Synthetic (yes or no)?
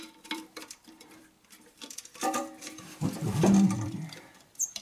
yes